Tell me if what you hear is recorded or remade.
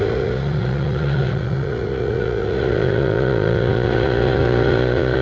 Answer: remade